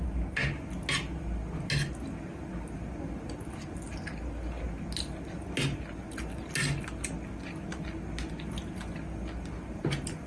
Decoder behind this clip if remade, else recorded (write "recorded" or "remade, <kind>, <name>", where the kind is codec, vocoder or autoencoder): recorded